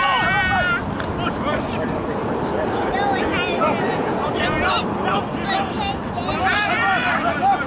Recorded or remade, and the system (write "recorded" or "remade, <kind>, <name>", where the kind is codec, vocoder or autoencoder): recorded